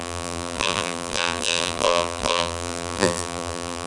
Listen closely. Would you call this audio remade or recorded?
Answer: remade